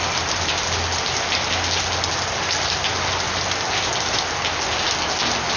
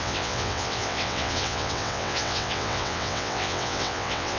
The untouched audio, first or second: first